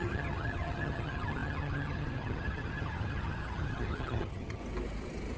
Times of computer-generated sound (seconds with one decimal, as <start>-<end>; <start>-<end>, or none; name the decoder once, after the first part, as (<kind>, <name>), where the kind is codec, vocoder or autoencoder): 0.0-4.6 (vocoder, HiFi-GAN)

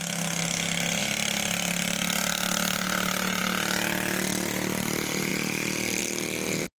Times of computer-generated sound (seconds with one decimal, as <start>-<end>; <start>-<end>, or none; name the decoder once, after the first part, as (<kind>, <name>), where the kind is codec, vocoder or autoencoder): none

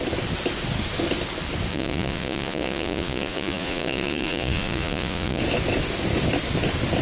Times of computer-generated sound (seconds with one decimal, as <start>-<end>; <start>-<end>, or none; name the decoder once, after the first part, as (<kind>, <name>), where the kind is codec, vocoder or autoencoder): 1.7-5.4 (vocoder, Vocos)

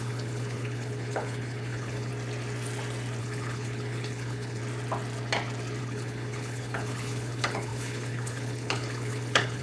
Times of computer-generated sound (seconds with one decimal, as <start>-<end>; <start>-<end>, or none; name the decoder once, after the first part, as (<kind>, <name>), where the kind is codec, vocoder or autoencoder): 0.0-2.1 (codec, HILCodec); 3.2-4.6; 5.8-9.6

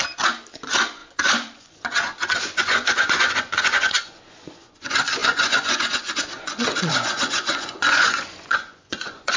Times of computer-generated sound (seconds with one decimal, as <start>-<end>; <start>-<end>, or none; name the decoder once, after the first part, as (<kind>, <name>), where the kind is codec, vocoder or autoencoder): 0.6-9.4 (vocoder, Vocos)

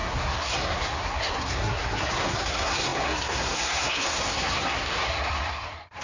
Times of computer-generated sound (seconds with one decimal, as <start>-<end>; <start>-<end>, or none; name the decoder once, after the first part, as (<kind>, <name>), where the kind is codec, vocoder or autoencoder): 0.0-6.0 (codec, SNAC)